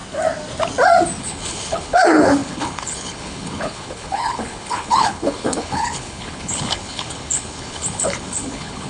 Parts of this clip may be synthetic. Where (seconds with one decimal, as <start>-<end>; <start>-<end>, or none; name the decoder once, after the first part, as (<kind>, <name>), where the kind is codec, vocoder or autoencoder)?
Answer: 1.2-8.9 (codec, HILCodec)